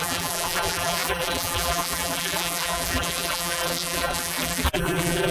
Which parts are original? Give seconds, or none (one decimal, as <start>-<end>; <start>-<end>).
none